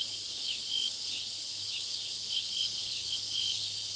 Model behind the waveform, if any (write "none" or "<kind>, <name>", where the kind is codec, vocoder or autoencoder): codec, HILCodec